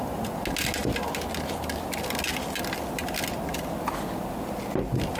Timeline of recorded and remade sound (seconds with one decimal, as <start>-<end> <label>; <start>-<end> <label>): 0.0-5.2 recorded